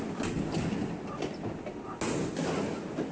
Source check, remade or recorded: recorded